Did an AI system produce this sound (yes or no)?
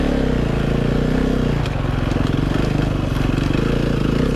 no